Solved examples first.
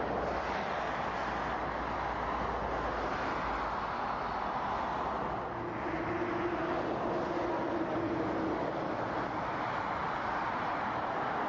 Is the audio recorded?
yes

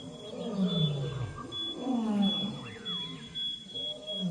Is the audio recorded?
yes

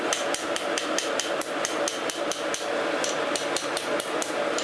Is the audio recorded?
yes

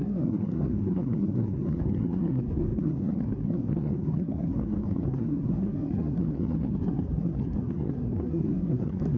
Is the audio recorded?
no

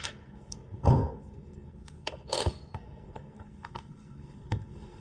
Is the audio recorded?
no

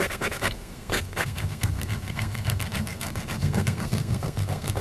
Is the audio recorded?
no